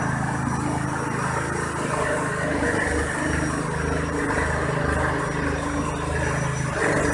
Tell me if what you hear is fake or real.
real